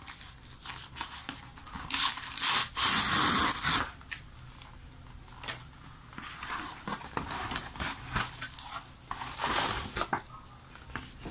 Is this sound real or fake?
real